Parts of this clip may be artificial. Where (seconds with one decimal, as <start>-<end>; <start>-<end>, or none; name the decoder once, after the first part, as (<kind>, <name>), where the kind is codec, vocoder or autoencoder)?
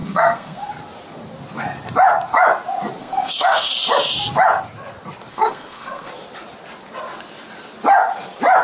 0.0-0.7 (codec, SNAC); 3.0-3.7; 5.3-6.1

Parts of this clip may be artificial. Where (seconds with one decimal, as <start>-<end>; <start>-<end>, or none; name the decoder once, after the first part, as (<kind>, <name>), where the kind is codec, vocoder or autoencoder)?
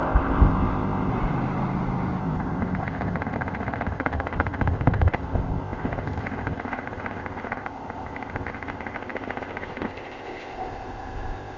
0.0-1.1 (codec, ZipCodec); 2.2-11.6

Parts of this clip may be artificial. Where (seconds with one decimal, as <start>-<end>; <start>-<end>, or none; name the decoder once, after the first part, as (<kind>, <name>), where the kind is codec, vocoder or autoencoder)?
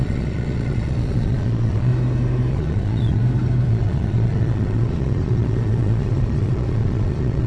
0.0-1.9 (vocoder, Vocos); 2.5-3.2; 3.7-7.5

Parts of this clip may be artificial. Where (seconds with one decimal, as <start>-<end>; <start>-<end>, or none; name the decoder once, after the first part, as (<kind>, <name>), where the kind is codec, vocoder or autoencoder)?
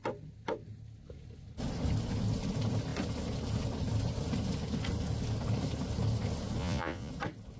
6.6-7.1 (vocoder, Vocos)